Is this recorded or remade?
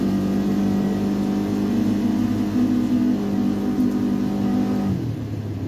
recorded